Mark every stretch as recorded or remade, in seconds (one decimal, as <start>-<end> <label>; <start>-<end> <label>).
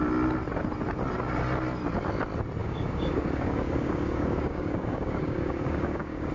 0.0-2.6 recorded; 2.6-6.3 remade